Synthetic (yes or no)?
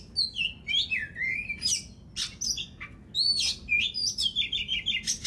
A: no